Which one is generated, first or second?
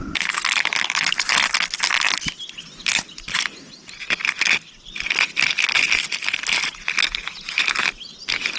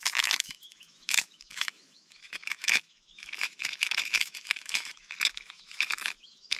second